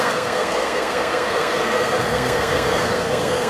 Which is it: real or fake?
fake